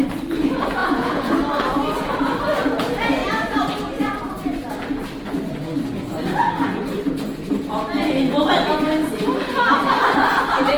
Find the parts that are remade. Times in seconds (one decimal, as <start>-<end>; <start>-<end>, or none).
0.8-1.3